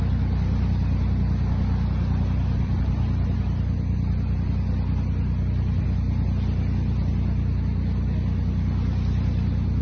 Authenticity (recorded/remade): recorded